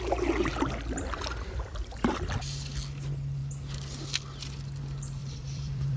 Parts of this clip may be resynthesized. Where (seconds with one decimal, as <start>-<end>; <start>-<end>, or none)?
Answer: 5.2-6.0